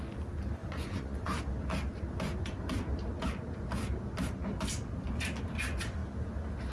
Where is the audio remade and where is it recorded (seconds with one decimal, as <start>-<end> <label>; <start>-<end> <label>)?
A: 0.0-0.6 recorded; 0.6-1.4 remade; 1.4-6.7 recorded